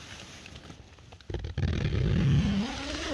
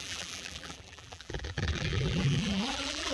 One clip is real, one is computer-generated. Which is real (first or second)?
first